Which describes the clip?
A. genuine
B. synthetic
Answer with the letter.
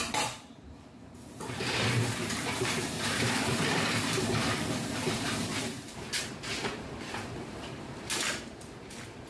B